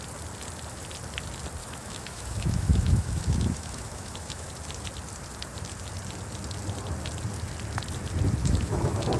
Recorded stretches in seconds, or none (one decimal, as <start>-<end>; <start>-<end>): 0.0-1.6; 4.5-8.4